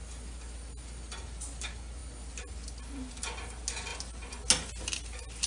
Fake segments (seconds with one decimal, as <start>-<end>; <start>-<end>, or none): none